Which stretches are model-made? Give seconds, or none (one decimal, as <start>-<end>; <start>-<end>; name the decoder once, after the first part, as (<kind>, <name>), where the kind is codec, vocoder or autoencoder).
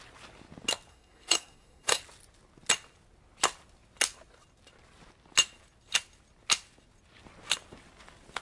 0.9-2.0 (codec, SNAC)